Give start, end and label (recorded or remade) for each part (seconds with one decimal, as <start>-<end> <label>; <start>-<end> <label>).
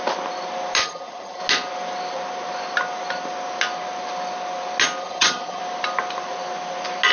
0.0-0.8 recorded; 0.8-1.4 remade; 1.4-5.0 recorded; 5.0-5.6 remade; 5.6-7.1 recorded